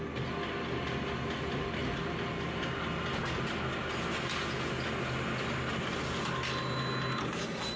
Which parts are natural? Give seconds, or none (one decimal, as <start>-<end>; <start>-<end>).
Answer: 0.0-7.8